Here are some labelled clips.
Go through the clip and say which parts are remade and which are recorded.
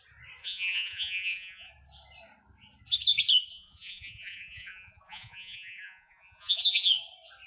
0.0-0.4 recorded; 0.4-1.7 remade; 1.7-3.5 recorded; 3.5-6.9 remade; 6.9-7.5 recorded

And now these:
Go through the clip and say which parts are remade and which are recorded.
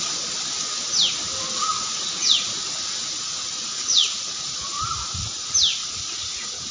0.0-1.6 recorded; 1.6-5.2 remade; 5.2-5.8 recorded; 5.8-6.7 remade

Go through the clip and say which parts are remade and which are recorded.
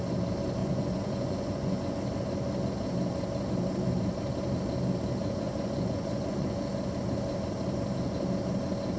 0.0-0.6 recorded; 0.6-2.1 remade; 2.1-5.2 recorded; 5.2-6.7 remade; 6.7-9.0 recorded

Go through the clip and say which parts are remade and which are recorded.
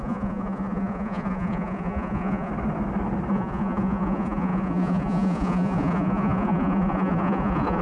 0.0-2.5 remade; 2.5-3.3 recorded; 3.3-7.8 remade